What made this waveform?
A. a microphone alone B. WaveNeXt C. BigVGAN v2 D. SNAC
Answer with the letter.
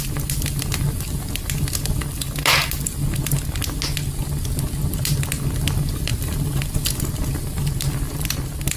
A